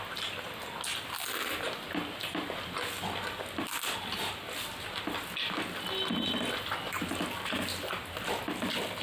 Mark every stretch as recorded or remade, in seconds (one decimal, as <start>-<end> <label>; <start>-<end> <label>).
0.0-9.0 recorded